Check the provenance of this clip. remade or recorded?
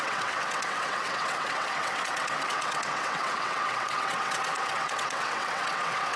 remade